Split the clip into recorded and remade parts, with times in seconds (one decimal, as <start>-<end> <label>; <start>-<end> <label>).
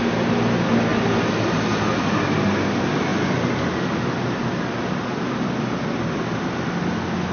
0.0-7.3 recorded